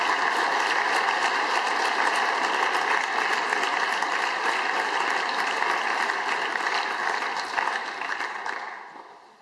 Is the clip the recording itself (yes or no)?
yes